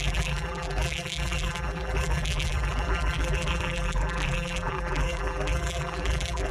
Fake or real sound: fake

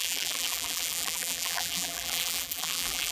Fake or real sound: fake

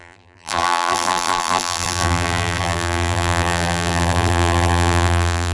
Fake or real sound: fake